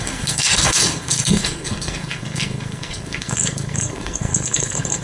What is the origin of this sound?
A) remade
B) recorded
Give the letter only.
A